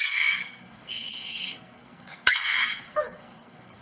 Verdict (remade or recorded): remade